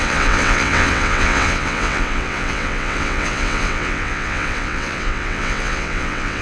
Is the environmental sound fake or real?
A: fake